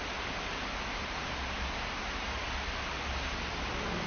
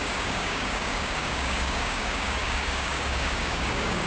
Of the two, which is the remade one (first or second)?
second